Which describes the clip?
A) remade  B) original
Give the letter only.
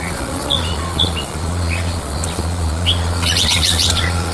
A